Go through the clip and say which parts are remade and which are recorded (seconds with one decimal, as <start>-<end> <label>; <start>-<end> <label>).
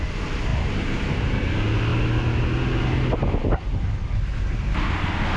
0.0-5.4 recorded